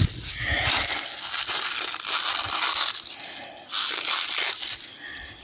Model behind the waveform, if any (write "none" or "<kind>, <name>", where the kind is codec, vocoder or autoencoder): none